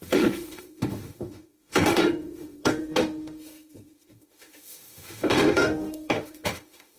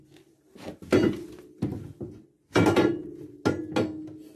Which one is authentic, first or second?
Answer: second